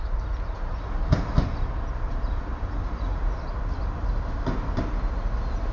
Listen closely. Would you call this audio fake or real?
real